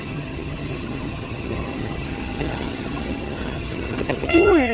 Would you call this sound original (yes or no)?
no